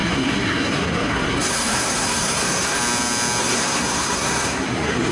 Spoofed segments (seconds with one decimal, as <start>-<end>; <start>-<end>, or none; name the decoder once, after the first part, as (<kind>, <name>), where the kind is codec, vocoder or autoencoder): 0.0-2.8 (codec, SNAC); 3.4-5.1